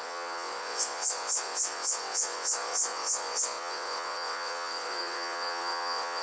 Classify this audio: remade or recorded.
remade